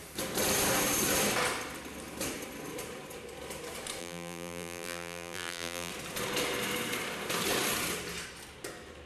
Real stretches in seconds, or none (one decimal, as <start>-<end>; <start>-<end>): 0.0-4.0; 5.9-9.1